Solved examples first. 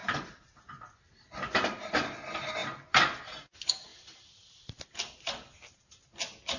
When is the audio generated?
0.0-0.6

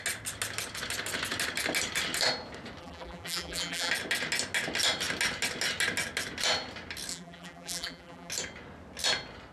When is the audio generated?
2.8-3.9; 7.1-8.3

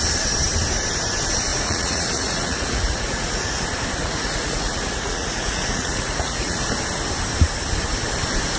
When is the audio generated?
1.5-3.6; 4.0-6.6

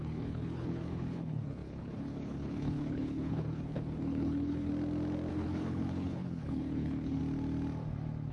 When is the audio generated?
0.0-4.7; 5.3-7.2

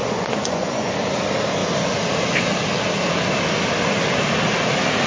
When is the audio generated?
0.0-0.9